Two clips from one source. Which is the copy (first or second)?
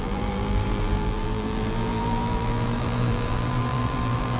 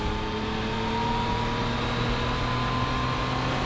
first